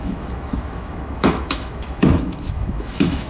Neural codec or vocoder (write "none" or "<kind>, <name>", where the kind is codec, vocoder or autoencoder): autoencoder, DAC-VAE